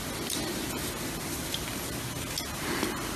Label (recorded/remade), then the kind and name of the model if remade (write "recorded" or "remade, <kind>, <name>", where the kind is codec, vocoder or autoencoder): recorded